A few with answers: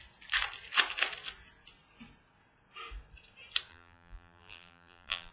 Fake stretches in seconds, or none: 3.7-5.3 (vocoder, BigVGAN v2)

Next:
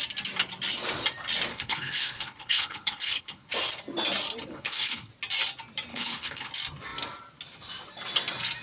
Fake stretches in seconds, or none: 1.5-3.5 (codec, HILCodec); 4.5-5.1; 5.9-6.5